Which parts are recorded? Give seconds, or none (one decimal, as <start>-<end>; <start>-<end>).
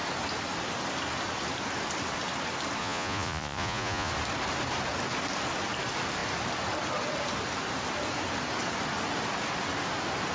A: 0.0-2.8; 4.1-10.3